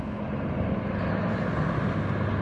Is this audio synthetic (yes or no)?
no